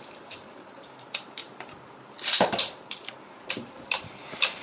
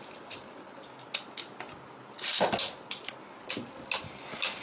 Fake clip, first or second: first